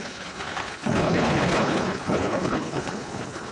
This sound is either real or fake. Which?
fake